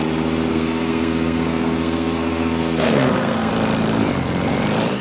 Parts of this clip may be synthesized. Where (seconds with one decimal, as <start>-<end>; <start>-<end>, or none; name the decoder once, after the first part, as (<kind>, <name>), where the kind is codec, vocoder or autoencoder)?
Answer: 0.5-3.5 (codec, SNAC)